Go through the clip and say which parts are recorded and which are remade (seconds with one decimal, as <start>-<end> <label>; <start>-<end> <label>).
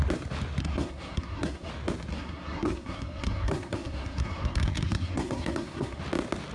0.0-0.6 recorded; 0.6-1.7 remade; 1.7-2.1 recorded; 2.1-6.0 remade; 6.0-6.5 recorded